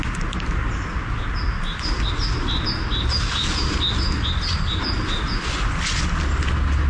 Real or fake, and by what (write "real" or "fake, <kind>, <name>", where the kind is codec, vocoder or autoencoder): real